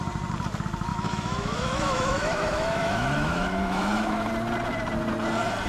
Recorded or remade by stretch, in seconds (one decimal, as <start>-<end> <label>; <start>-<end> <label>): 0.0-0.9 recorded; 0.9-4.3 remade; 4.3-5.7 recorded